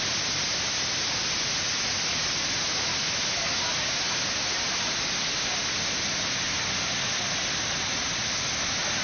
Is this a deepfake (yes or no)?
no